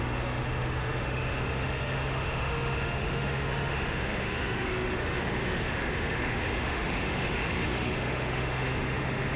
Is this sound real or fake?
fake